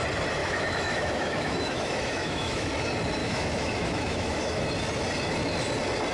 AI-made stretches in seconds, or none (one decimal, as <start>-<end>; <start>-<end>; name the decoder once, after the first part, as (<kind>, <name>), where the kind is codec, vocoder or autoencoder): 0.4-2.7 (autoencoder, DAC-VAE); 3.2-4.6